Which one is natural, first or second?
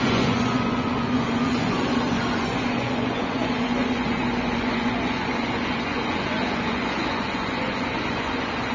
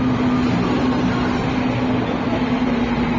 second